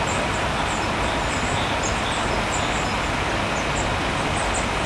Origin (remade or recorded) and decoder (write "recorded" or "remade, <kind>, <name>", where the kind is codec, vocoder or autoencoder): recorded